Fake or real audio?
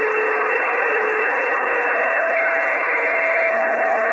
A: fake